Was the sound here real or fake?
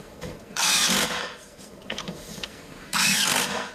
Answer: fake